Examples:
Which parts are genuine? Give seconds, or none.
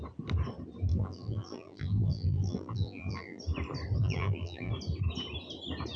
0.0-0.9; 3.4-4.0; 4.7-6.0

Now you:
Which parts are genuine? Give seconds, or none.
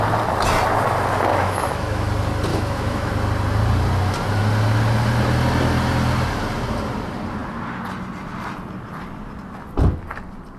0.0-1.3; 2.1-2.5; 3.1-10.6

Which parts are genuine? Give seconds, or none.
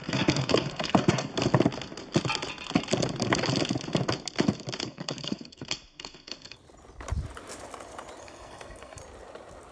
1.3-4.8; 6.6-8.2; 9.0-9.7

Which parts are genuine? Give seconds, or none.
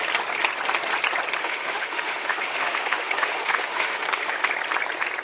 0.0-1.4; 4.5-5.2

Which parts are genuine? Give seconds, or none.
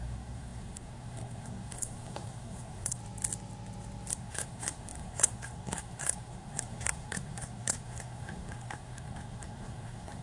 3.0-4.1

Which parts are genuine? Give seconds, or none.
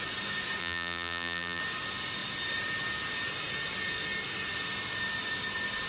0.0-0.6; 1.6-5.9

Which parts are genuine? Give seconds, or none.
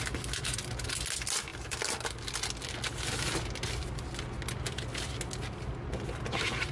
0.0-6.7